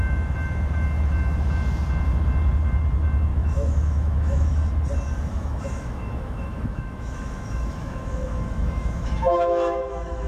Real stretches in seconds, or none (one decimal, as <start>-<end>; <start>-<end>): 0.0-3.3; 4.5-5.3